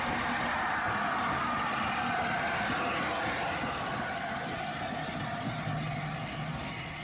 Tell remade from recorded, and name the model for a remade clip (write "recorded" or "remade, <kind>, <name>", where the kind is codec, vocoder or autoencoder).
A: recorded